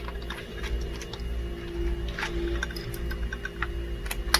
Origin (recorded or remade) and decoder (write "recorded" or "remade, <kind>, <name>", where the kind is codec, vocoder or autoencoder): recorded